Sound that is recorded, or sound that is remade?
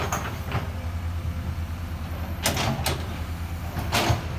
recorded